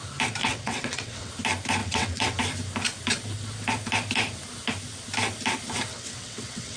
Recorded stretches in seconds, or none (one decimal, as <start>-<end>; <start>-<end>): 0.0-0.4; 1.3-1.8; 2.4-5.9